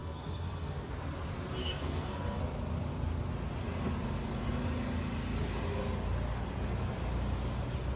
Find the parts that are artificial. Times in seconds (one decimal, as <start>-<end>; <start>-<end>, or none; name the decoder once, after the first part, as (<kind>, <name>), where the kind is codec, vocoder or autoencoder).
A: 0.0-0.9 (codec, SNAC); 1.6-2.4